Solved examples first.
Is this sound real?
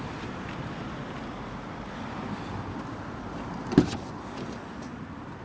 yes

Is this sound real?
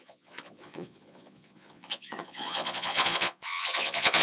no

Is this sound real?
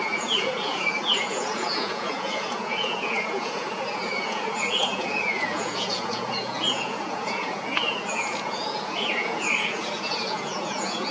no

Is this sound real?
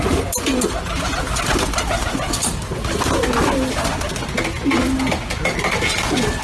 yes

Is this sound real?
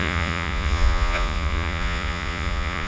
no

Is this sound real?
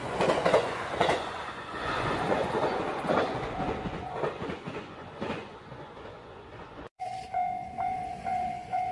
no